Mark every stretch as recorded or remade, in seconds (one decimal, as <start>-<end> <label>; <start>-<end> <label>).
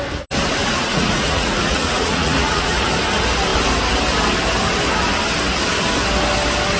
0.0-0.6 recorded; 0.6-2.9 remade; 2.9-6.8 recorded